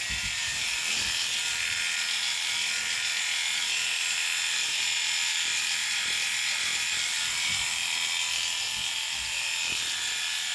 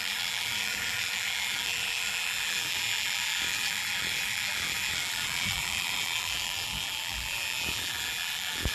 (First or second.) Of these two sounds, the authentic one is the first